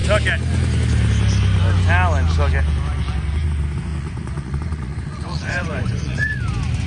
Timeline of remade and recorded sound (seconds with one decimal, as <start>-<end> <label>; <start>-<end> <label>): 0.0-3.9 recorded; 3.9-6.4 remade; 6.4-6.9 recorded